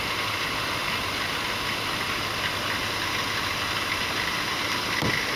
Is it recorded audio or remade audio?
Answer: recorded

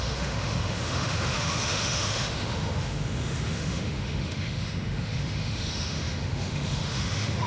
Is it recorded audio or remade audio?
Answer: remade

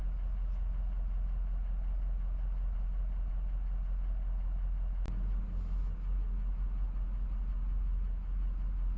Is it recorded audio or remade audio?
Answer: recorded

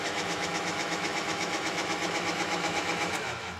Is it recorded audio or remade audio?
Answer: remade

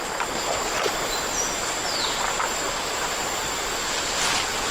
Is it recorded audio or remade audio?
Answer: recorded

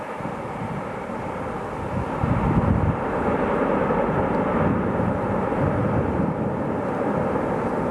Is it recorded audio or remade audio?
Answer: recorded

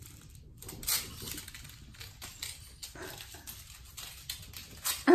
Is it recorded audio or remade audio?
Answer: recorded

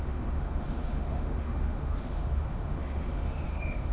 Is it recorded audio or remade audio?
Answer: remade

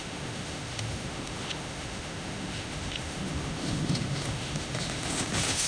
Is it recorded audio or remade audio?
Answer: remade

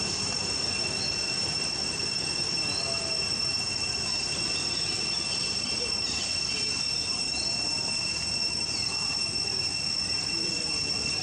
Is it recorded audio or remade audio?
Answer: recorded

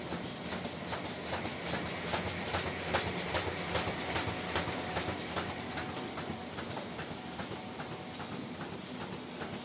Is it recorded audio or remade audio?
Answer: recorded